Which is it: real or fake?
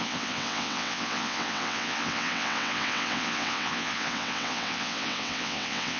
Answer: fake